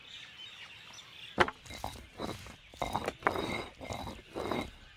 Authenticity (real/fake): real